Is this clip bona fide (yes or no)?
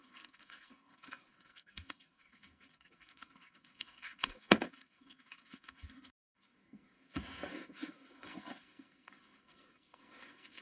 no